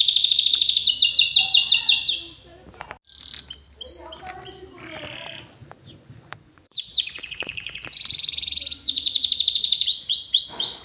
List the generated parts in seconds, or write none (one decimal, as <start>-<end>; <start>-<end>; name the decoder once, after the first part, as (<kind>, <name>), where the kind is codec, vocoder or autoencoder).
5.6-10.8 (vocoder, Vocos)